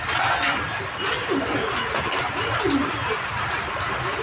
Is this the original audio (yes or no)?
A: yes